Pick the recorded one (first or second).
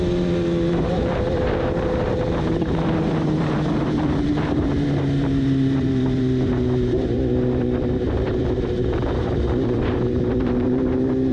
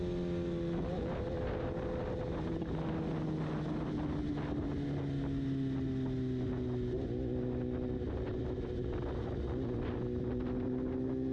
second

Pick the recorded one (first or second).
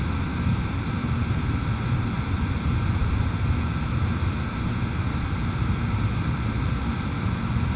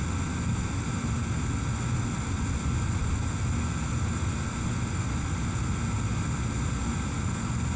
second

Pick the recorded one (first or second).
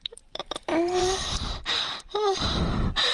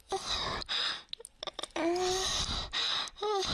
second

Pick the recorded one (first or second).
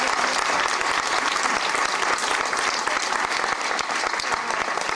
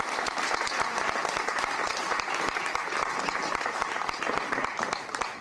first